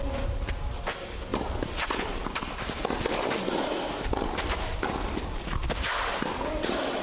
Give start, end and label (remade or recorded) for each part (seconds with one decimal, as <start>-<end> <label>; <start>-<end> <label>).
0.0-7.0 recorded